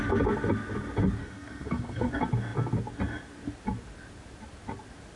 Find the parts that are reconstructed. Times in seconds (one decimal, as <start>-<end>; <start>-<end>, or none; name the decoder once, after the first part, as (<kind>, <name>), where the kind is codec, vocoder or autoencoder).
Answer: 1.2-2.1 (codec, SNAC)